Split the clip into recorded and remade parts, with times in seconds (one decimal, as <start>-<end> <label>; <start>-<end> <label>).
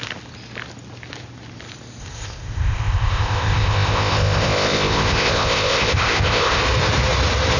0.0-2.0 recorded; 2.0-6.6 remade; 6.6-7.6 recorded